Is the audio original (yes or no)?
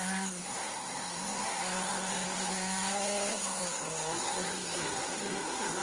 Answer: no